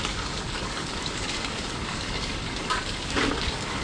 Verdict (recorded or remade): remade